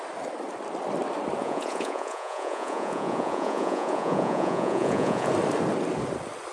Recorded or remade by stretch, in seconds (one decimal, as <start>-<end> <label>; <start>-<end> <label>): 0.0-1.4 recorded; 1.4-5.3 remade; 5.3-6.5 recorded